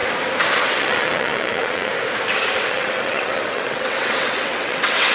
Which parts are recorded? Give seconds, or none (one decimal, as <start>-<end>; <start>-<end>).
0.0-0.6; 1.9-2.7